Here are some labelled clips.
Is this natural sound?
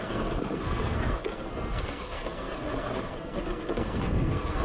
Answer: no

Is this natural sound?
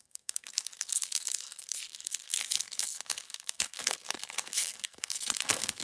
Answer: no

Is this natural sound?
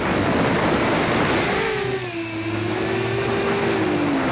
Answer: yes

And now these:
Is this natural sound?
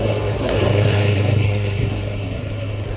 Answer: no